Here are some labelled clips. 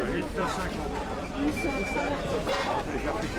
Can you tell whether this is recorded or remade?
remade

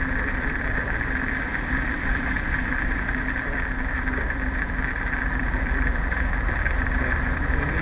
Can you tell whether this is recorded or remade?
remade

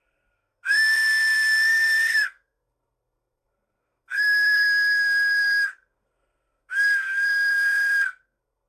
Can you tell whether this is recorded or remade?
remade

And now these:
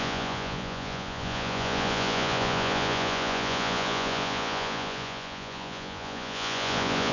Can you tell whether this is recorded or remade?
remade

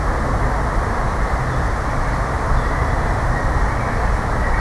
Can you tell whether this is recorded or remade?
recorded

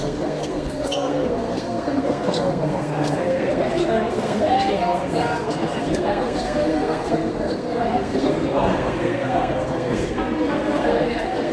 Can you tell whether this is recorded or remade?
remade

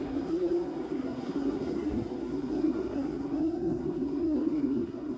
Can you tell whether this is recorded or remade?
remade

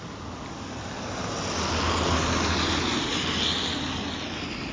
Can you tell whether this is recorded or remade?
recorded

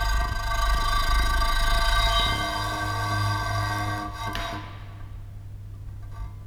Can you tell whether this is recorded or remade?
recorded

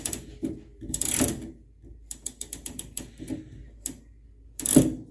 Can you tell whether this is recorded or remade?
recorded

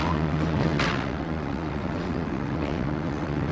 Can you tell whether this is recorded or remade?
remade